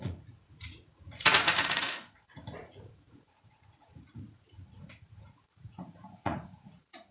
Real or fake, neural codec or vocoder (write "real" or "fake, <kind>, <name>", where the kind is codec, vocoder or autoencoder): fake, vocoder, Vocos